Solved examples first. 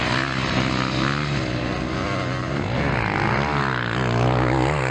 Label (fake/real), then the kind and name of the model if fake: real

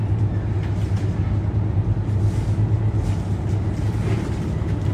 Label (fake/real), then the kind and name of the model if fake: real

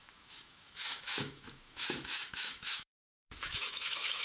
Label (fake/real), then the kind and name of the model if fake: fake, autoencoder, DAC-VAE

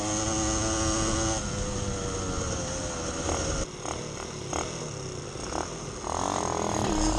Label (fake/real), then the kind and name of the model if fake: real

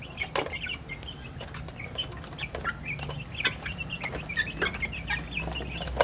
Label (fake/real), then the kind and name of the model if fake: real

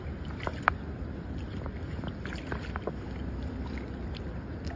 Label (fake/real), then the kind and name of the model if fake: real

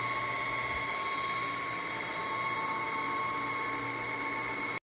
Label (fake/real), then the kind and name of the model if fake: real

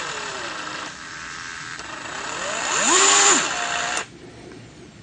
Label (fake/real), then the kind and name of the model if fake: fake, vocoder, BigVGAN v2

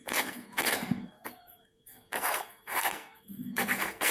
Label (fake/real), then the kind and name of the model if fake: fake, codec, SNAC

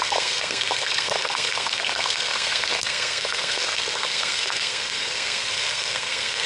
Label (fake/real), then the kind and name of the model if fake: fake, codec, SNAC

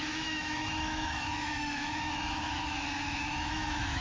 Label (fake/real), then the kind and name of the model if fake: fake, autoencoder, DAC-VAE